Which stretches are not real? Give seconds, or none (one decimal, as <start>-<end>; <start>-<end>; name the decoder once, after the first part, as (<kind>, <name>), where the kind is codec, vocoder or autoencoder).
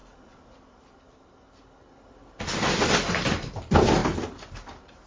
none